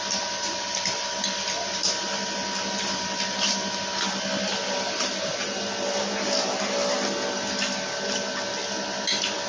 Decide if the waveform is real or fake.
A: real